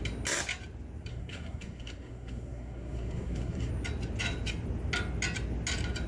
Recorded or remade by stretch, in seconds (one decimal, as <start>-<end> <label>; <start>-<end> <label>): 0.0-1.1 recorded; 1.1-3.7 remade; 3.7-6.1 recorded